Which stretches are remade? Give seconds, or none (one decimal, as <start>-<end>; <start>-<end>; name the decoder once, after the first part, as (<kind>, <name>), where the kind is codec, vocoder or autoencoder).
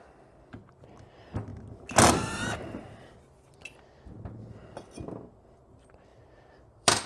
6.1-7.1 (vocoder, BigVGAN v2)